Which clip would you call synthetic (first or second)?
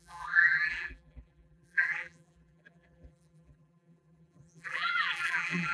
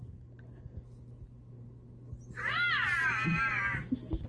first